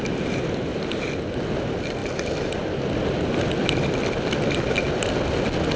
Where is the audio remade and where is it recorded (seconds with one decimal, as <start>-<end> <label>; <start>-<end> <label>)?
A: 0.0-5.8 recorded